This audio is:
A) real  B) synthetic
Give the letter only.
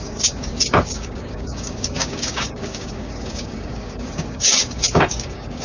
B